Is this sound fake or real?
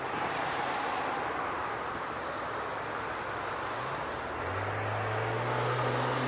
real